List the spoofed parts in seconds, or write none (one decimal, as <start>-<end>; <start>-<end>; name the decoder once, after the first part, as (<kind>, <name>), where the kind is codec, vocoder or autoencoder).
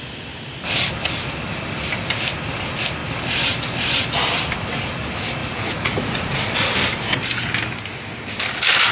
5.4-6.8 (vocoder, Vocos)